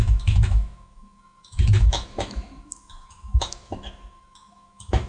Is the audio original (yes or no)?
no